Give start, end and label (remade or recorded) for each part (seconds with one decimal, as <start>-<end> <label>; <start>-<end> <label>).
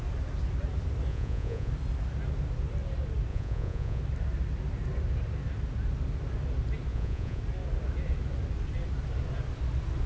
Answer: 0.0-1.1 recorded; 1.1-1.7 remade; 1.7-3.3 recorded; 3.3-4.0 remade; 4.0-6.9 recorded; 6.9-7.4 remade; 7.4-10.1 recorded